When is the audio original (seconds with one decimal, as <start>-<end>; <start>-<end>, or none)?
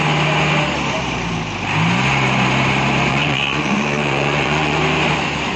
0.0-3.1; 4.8-5.6